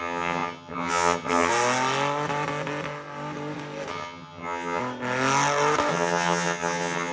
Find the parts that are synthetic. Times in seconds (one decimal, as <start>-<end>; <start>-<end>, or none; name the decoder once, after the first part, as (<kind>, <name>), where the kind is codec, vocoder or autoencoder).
0.0-1.5 (vocoder, HiFi-GAN); 3.9-4.8; 5.9-7.1

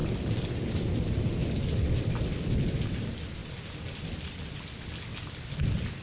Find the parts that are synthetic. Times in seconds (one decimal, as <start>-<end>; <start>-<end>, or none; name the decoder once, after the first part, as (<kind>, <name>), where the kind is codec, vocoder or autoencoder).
none

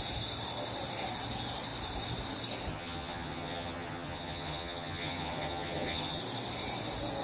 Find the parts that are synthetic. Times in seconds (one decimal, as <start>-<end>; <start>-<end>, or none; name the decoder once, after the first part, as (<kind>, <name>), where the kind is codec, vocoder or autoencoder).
2.7-6.2 (vocoder, HiFi-GAN)

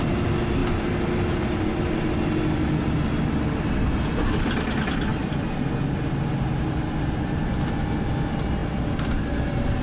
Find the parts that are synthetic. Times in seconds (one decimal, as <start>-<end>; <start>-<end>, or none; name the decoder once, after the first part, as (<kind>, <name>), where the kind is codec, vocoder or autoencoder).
none

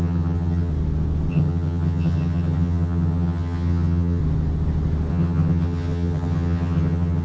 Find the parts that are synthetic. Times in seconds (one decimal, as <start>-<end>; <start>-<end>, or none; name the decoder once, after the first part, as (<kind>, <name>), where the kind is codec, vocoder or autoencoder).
0.0-0.7 (vocoder, HiFi-GAN); 1.3-4.2; 5.1-7.2